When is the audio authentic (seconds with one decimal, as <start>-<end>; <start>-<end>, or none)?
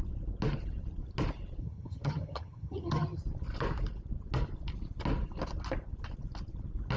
0.0-1.6; 3.2-7.0